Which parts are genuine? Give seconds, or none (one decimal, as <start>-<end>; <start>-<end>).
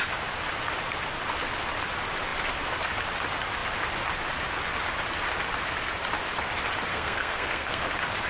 0.0-6.9; 7.9-8.3